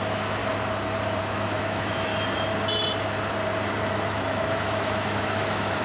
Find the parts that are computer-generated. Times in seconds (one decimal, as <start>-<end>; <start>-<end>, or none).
0.0-0.4; 1.2-2.1; 3.9-5.8